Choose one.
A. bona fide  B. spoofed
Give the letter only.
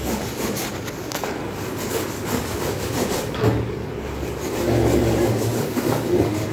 B